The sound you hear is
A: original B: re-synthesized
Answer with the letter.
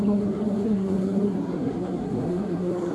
B